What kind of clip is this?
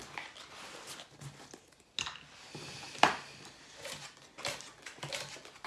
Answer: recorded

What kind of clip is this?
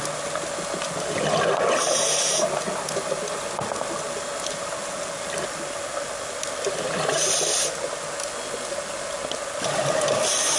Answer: recorded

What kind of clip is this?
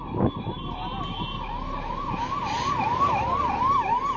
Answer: recorded